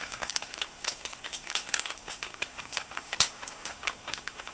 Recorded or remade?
remade